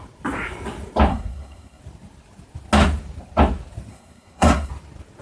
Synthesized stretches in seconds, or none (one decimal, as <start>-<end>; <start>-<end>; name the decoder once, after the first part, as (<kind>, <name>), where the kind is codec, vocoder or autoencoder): 1.1-1.8 (codec, SNAC); 3.9-4.7